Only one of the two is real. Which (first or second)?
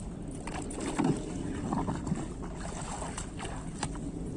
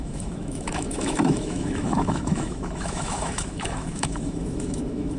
first